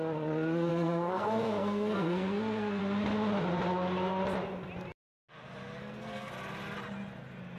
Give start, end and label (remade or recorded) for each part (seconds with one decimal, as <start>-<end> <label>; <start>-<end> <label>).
0.0-0.7 recorded; 0.7-2.8 remade; 2.8-5.8 recorded; 5.8-6.3 remade; 6.3-7.6 recorded